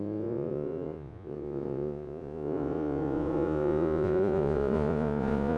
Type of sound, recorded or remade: remade